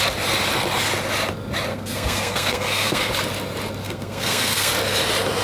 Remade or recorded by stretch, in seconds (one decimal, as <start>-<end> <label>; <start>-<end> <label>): 0.0-1.7 recorded; 1.7-3.1 remade; 3.1-3.8 recorded; 3.8-4.7 remade; 4.7-5.4 recorded